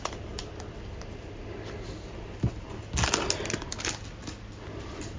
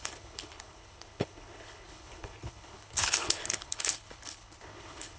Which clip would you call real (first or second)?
first